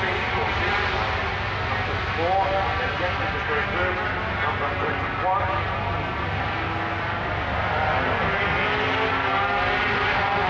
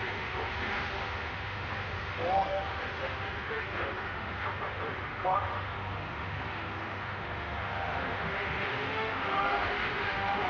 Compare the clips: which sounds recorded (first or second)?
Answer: first